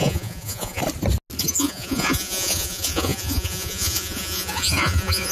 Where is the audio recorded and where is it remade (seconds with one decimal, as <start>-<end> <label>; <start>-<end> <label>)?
0.0-0.8 remade; 0.8-1.4 recorded; 1.4-5.3 remade

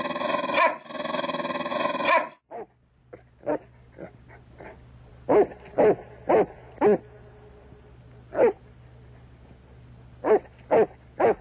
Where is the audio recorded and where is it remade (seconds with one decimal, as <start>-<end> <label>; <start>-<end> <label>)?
0.0-11.4 recorded

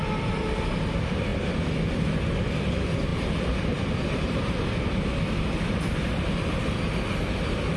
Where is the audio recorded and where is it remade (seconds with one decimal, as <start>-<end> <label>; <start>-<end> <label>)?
0.0-7.8 recorded

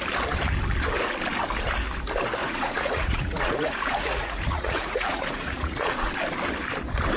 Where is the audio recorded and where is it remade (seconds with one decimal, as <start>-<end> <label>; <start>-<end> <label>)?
0.0-2.4 recorded; 2.4-6.1 remade; 6.1-7.2 recorded

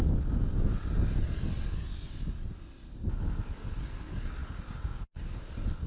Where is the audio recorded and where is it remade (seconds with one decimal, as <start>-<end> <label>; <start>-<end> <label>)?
0.0-5.9 recorded

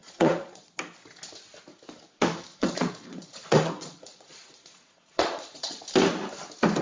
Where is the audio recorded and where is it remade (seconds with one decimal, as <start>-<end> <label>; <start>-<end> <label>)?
0.0-0.7 remade; 0.7-2.5 recorded; 2.5-5.8 remade; 5.8-6.8 recorded